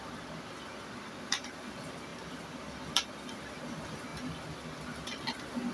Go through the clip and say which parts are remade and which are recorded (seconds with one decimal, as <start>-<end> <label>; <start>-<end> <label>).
0.0-5.7 recorded